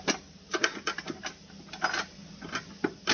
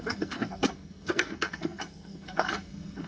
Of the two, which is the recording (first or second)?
first